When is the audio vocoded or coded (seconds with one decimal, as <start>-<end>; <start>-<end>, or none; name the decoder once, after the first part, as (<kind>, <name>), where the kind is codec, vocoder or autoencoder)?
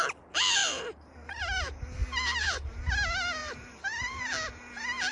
0.6-1.4 (vocoder, BigVGAN v2); 2.0-2.8; 3.4-4.2